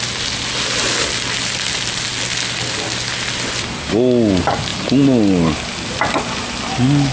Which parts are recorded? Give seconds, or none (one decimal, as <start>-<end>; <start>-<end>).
0.0-7.1